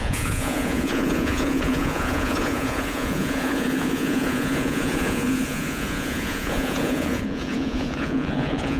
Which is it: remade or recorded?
remade